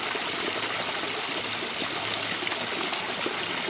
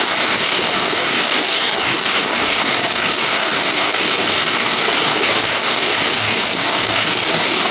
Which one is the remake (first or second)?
second